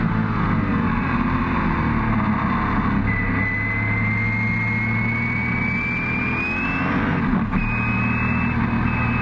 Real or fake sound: real